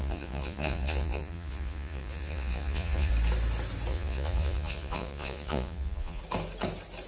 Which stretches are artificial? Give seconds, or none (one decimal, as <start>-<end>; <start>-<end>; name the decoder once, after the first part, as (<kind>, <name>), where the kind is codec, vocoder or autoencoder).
0.0-3.1 (vocoder, Vocos); 3.9-6.2